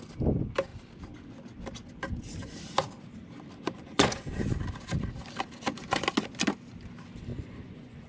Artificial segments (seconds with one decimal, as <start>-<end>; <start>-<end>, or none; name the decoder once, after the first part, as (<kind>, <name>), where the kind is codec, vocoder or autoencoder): 3.8-4.3 (vocoder, Vocos); 7.3-8.1